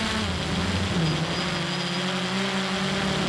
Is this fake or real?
real